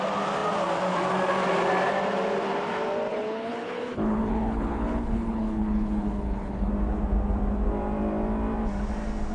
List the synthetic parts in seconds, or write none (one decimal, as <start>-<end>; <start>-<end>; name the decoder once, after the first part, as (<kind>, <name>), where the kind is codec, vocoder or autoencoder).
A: 3.1-6.7 (codec, HILCodec)